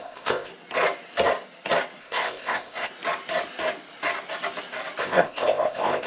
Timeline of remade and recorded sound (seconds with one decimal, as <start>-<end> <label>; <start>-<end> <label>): 0.0-0.5 remade; 0.5-2.0 recorded; 2.0-2.9 remade; 2.9-5.0 recorded; 5.0-6.1 remade